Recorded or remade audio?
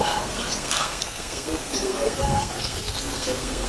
remade